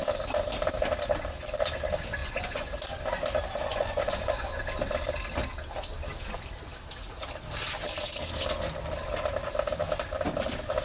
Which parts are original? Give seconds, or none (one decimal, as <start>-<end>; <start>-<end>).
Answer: 0.0-2.2; 2.7-3.7; 4.6-10.8